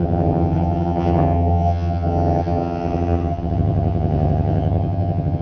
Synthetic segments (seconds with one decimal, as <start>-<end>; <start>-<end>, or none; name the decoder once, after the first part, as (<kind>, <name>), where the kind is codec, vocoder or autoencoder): 0.0-5.4 (vocoder, HiFi-GAN)